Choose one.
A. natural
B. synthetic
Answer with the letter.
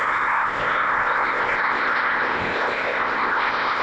B